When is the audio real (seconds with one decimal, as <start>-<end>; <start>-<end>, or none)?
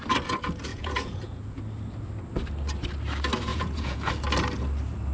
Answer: 0.0-0.7; 1.6-3.5; 4.1-5.1